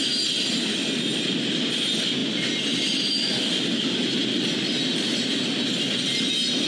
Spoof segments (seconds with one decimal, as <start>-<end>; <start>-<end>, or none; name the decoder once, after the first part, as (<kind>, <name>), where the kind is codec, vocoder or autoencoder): none

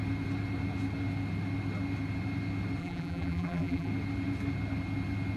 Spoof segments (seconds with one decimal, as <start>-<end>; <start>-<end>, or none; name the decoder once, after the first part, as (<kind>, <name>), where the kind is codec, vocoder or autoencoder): 2.8-3.9 (vocoder, BigVGAN v2)

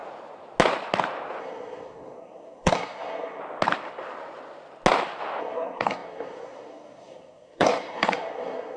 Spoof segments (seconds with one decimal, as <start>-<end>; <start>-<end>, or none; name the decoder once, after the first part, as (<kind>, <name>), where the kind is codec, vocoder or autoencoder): 1.4-3.4 (codec, SNAC); 5.4-8.8

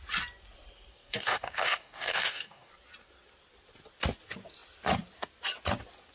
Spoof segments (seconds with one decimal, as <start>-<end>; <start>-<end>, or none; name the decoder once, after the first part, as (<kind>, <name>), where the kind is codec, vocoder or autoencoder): 0.9-2.7 (codec, DAC)